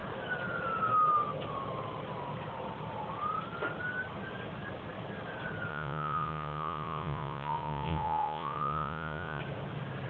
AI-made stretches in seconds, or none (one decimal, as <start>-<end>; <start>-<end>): 5.7-9.4